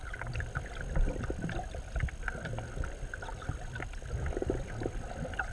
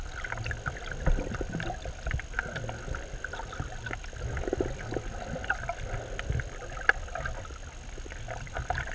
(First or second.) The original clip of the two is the second